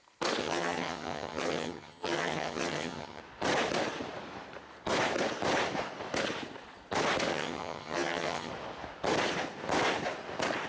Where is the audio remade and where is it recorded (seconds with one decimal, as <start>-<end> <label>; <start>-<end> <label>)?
0.0-0.4 recorded; 0.4-3.2 remade; 3.2-7.3 recorded; 7.3-8.5 remade; 8.5-10.7 recorded